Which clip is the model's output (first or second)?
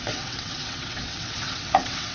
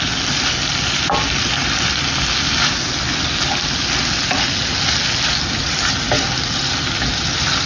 first